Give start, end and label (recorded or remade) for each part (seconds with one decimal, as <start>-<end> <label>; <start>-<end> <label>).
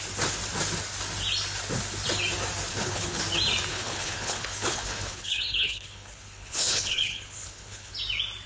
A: 0.0-2.7 recorded; 2.7-3.2 remade; 3.2-3.7 recorded; 3.7-7.9 remade; 7.9-8.5 recorded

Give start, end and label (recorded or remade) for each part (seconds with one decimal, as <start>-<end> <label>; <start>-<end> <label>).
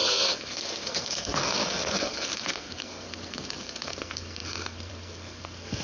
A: 0.0-5.8 remade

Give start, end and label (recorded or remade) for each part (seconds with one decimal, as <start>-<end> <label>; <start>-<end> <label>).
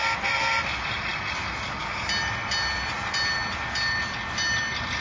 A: 0.0-0.6 remade; 0.6-5.0 recorded